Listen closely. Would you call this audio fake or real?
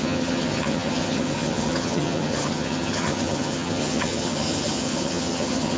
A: fake